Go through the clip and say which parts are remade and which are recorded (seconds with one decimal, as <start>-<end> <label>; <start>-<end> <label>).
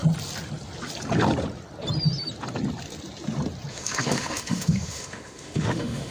0.0-3.7 recorded; 3.7-6.1 remade